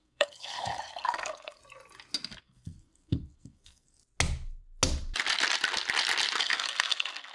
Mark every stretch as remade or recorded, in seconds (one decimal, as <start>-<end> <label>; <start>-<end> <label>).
0.0-1.6 remade; 1.6-2.4 recorded; 2.4-4.0 remade; 4.0-6.4 recorded; 6.4-7.3 remade